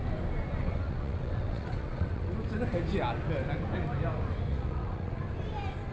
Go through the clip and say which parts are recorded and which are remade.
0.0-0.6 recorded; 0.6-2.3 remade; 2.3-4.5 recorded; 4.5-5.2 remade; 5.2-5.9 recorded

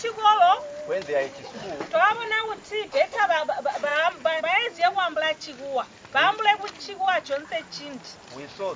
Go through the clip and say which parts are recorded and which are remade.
0.0-8.8 recorded

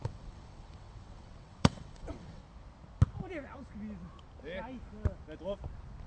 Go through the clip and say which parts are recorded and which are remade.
0.0-2.4 remade; 2.4-6.1 recorded

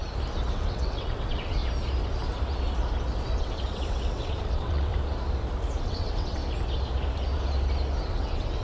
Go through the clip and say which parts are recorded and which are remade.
0.0-0.5 recorded; 0.5-1.6 remade; 1.6-3.4 recorded; 3.4-4.9 remade; 4.9-5.8 recorded; 5.8-6.4 remade; 6.4-8.1 recorded; 8.1-8.6 remade